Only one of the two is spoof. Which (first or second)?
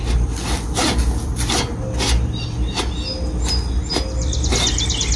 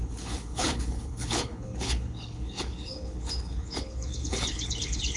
second